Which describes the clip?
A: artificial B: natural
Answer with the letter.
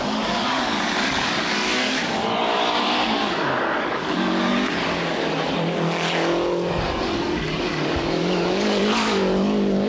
A